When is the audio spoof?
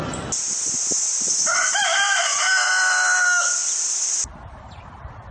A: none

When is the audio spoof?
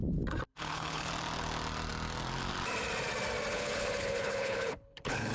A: 0.5-1.1; 3.5-5.3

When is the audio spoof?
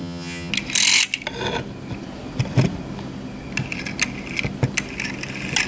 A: 0.0-0.5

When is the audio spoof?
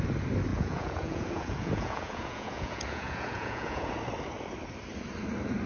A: 0.5-3.9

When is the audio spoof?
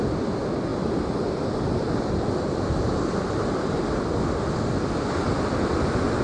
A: none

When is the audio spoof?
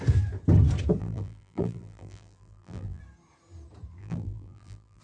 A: 1.0-3.0; 4.0-5.0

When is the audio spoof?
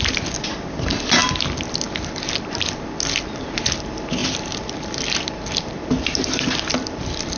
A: none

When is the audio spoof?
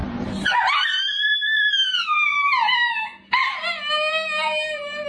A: 0.0-0.7